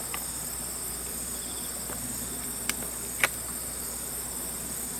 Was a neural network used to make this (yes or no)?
no